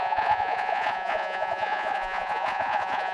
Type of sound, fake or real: fake